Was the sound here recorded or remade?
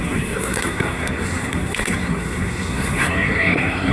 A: remade